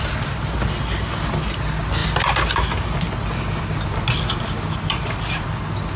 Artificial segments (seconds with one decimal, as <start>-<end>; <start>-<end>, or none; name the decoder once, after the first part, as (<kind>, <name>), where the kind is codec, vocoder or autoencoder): none